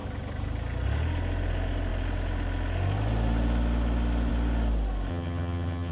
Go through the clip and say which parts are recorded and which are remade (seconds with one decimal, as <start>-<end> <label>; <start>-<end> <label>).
0.0-5.1 recorded; 5.1-5.9 remade